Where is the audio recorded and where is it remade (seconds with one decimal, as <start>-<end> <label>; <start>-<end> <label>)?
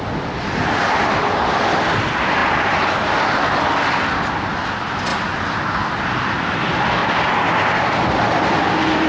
0.0-9.1 recorded